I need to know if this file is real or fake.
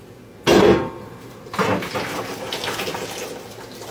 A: real